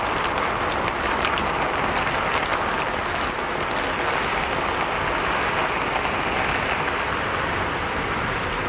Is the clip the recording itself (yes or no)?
yes